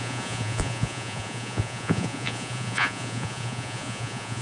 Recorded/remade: remade